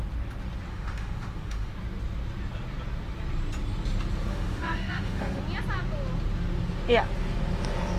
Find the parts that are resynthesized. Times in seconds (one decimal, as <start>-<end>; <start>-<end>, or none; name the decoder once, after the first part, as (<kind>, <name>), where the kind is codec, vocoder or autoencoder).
0.7-1.7 (autoencoder, DAC-VAE); 4.3-5.4